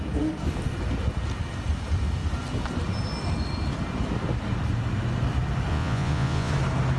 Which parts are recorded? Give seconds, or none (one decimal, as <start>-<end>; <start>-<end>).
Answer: 0.0-5.7; 6.5-7.0